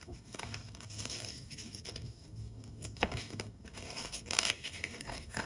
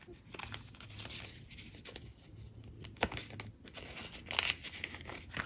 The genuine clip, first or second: second